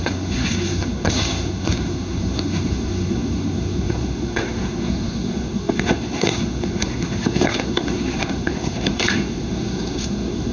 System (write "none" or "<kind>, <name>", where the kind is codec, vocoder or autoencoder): codec, SNAC